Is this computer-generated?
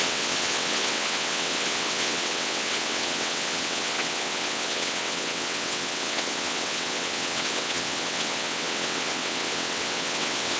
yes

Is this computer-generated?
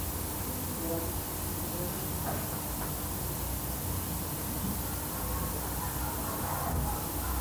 no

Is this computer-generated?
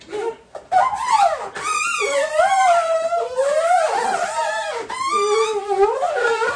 no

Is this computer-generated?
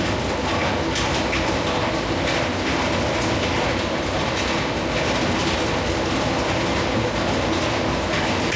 no